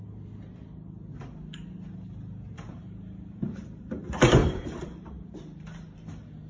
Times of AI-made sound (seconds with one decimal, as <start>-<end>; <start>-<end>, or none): 2.8-3.9; 4.4-6.1